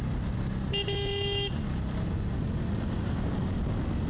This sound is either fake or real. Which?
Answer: real